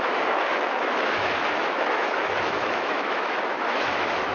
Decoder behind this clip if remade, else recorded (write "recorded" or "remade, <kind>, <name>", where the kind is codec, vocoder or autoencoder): remade, autoencoder, DAC-VAE